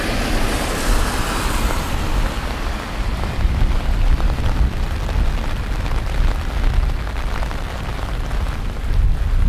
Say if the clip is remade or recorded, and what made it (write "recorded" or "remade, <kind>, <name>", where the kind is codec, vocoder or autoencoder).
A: recorded